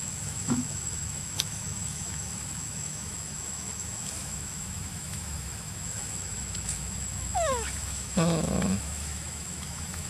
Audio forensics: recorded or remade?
remade